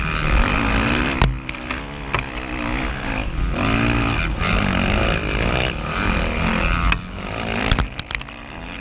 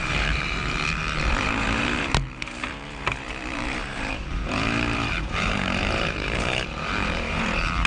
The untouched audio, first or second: first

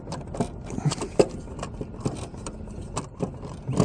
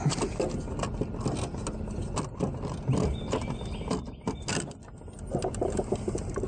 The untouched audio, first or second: second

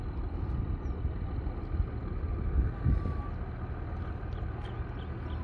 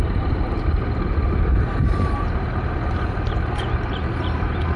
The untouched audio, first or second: first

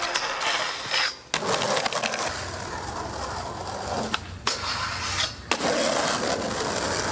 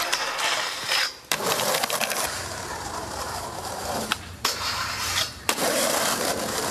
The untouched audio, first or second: first